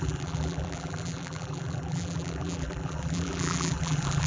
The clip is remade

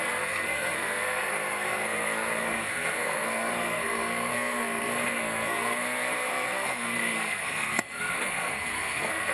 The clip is remade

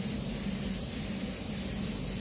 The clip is recorded